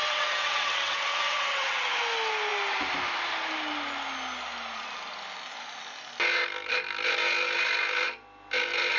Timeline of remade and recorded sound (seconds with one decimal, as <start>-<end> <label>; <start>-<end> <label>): 0.0-2.0 remade; 2.0-9.0 recorded